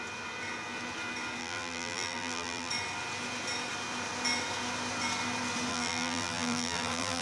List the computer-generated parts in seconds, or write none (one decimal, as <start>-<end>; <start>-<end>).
1.4-2.7; 5.7-7.2